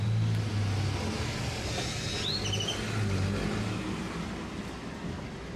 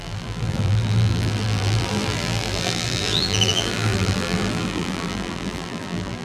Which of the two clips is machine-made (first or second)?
second